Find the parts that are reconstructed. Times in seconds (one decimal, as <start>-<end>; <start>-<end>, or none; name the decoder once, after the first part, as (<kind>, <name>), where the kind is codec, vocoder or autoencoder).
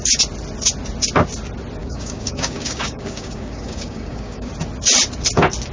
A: 1.8-4.5 (codec, DAC)